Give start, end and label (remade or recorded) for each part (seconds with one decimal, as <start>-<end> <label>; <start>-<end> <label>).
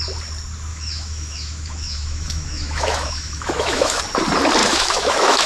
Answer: 0.0-0.7 recorded; 0.7-4.0 remade; 4.0-4.6 recorded; 4.6-5.5 remade